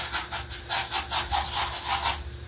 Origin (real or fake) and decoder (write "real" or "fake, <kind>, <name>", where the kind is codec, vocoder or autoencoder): real